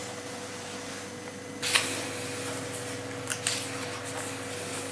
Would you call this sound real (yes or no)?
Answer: yes